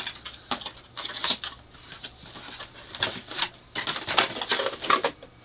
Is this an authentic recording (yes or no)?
yes